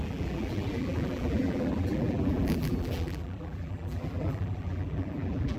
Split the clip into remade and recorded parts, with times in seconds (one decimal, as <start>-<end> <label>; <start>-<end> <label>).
0.0-5.6 remade